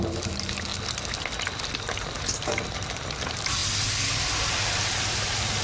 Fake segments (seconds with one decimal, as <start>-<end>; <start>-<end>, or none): 0.0-0.7; 1.8-3.6; 4.4-5.6